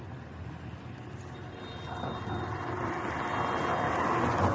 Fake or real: real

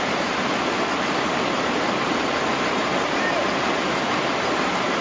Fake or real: real